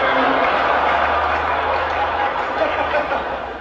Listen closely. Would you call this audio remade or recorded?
remade